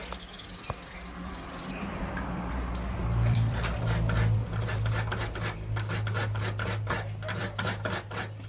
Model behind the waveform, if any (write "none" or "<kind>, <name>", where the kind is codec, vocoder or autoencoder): vocoder, BigVGAN v2